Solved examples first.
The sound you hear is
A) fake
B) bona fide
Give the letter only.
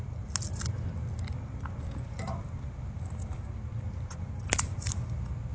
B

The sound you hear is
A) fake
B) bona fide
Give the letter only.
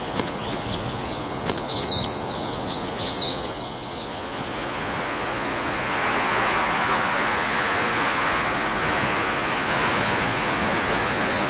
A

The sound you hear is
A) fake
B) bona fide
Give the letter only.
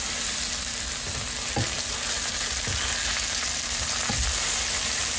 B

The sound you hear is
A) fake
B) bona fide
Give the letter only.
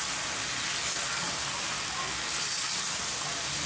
B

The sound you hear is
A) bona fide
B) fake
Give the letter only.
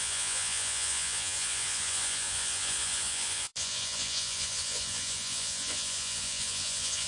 B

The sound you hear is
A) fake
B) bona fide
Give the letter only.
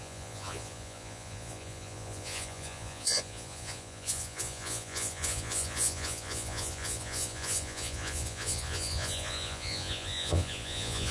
A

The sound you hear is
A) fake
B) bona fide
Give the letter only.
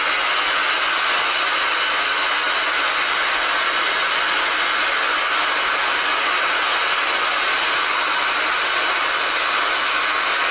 B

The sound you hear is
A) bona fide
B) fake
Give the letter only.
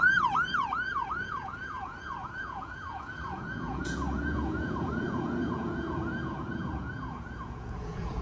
B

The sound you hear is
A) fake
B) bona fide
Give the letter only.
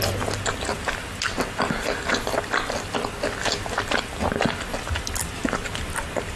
B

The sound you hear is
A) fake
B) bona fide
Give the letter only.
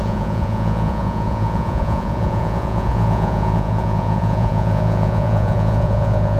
A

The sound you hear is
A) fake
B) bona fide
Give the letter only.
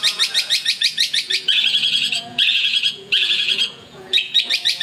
A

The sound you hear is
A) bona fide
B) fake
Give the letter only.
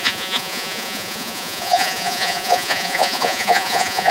B